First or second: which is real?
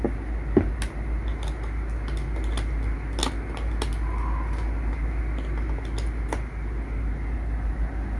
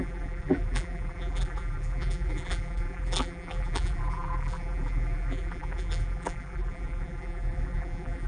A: first